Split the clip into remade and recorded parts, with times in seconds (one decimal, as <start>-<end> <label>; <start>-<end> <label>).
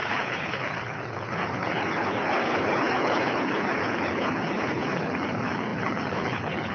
0.0-6.7 remade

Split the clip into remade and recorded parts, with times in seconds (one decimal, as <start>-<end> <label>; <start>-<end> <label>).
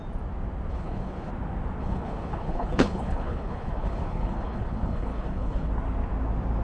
0.0-0.7 recorded; 0.7-1.3 remade; 1.3-1.8 recorded; 1.8-5.7 remade; 5.7-6.6 recorded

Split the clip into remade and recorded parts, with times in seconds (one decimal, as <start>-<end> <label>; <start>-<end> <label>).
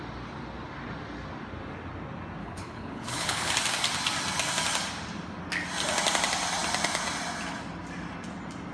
0.0-2.4 recorded; 2.4-3.5 remade; 3.5-8.7 recorded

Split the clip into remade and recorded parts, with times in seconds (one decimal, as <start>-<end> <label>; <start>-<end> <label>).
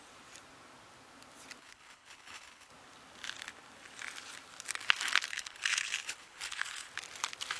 0.0-1.6 recorded; 1.6-2.7 remade; 2.7-5.3 recorded; 5.3-6.9 remade; 6.9-7.6 recorded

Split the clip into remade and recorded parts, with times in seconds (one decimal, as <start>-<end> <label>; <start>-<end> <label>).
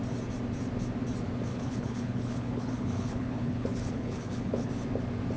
0.0-1.5 recorded; 1.5-4.7 remade; 4.7-5.4 recorded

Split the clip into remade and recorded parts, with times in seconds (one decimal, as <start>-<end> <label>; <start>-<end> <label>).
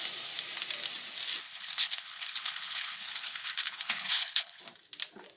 0.0-1.4 recorded; 1.4-4.6 remade; 4.6-5.4 recorded